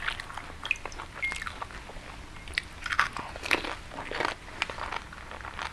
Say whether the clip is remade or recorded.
recorded